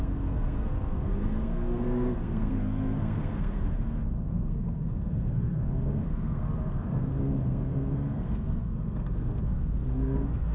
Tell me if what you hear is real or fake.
fake